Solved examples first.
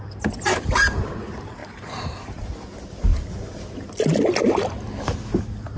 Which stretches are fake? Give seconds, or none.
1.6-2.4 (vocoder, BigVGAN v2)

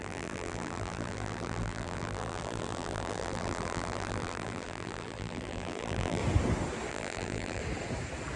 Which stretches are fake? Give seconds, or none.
0.0-6.2 (vocoder, BigVGAN v2); 6.9-7.6

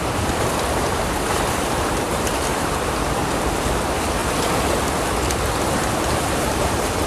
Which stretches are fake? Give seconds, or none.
0.0-4.2 (vocoder, BigVGAN v2); 5.6-7.1

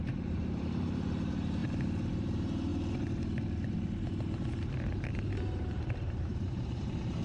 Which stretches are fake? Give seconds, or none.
0.0-1.6 (vocoder, BigVGAN v2); 2.1-2.7; 4.3-7.2

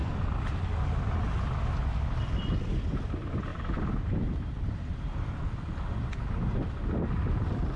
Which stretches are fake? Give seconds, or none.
0.0-0.9 (vocoder, BigVGAN v2); 3.5-5.9

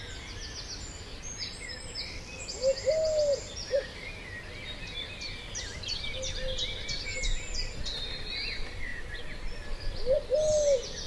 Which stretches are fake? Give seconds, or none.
none

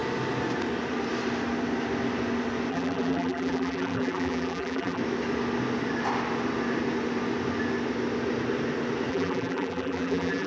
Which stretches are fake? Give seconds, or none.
2.7-5.0 (vocoder, BigVGAN v2); 9.1-10.5